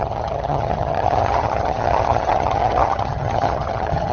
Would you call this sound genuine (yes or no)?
no